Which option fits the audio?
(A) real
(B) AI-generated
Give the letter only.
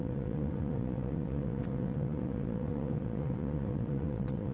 B